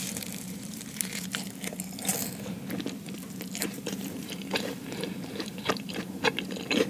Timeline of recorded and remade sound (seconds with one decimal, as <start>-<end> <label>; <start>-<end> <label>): 0.0-1.1 remade; 1.1-3.6 recorded; 3.6-6.2 remade; 6.2-6.9 recorded